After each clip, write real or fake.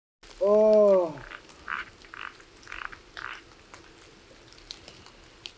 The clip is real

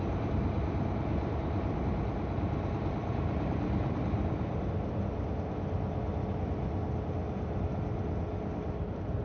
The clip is real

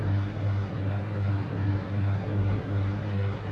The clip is fake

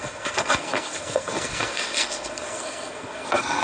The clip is fake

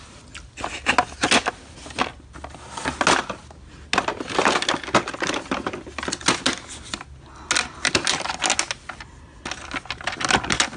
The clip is real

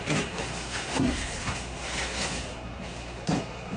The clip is fake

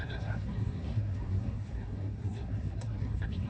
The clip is fake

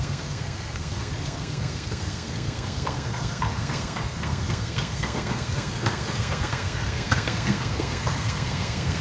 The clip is fake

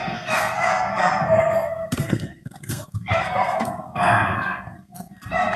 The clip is fake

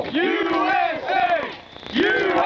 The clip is real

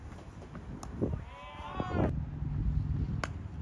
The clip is real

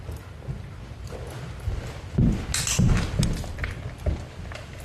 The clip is real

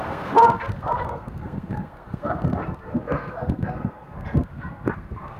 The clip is fake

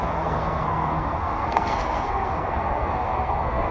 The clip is fake